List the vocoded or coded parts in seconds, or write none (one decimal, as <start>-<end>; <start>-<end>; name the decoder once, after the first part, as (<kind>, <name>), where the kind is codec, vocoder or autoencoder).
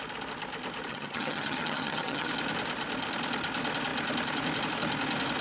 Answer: 0.9-2.3 (vocoder, HiFi-GAN)